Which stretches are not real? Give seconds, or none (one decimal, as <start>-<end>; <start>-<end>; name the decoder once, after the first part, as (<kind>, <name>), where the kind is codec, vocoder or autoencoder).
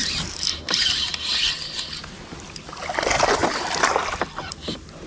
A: 0.0-0.9 (vocoder, BigVGAN v2)